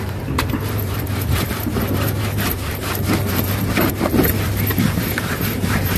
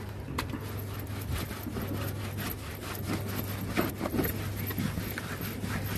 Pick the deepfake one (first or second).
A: first